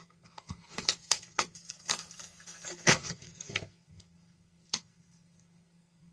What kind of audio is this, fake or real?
fake